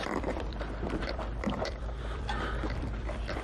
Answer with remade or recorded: remade